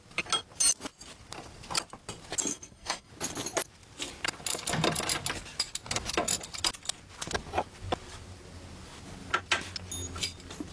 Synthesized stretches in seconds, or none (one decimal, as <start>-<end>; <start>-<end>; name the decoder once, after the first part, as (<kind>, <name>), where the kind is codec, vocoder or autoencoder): 2.5-3.1 (codec, SNAC)